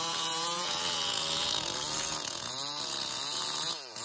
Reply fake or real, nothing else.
fake